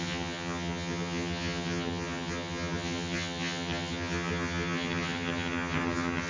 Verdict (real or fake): fake